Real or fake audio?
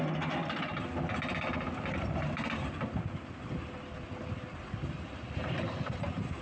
real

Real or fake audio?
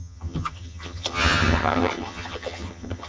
fake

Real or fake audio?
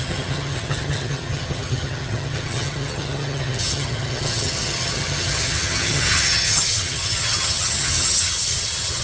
fake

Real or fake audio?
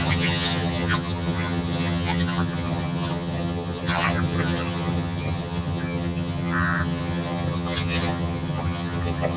fake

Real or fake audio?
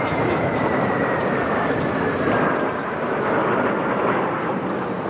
real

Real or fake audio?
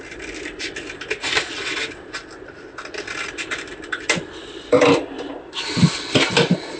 real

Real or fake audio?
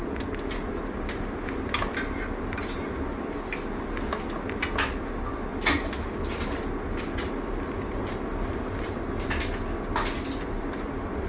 real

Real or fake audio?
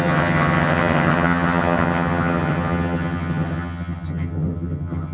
fake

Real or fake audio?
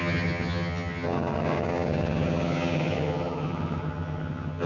fake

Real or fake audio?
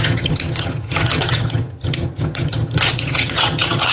fake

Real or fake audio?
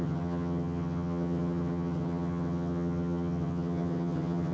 fake